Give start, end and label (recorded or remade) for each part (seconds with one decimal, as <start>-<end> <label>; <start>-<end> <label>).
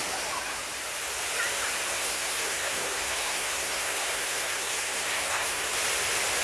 0.0-1.9 recorded; 1.9-5.7 remade; 5.7-6.4 recorded